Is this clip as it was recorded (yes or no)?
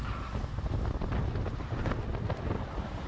yes